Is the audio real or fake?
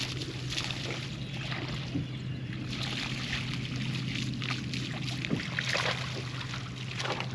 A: real